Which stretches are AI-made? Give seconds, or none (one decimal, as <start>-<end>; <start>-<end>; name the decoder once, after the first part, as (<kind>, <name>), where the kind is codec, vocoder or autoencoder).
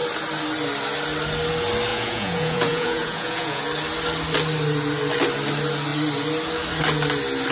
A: 1.9-3.6 (vocoder, Vocos)